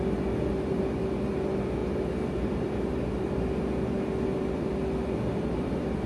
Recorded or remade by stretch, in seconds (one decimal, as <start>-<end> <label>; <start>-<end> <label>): 0.0-1.8 recorded; 1.8-3.2 remade; 3.2-6.1 recorded